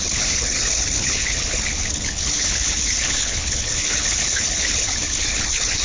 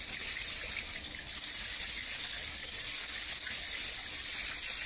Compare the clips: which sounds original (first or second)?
second